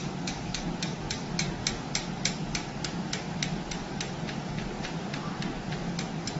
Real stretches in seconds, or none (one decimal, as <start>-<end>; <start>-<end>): 0.0-2.0; 5.8-6.4

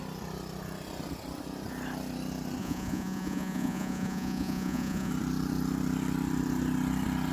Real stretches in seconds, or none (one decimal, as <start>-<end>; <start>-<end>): 0.0-2.6; 5.1-7.3